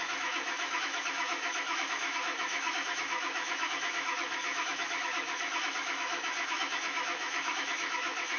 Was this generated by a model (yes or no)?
yes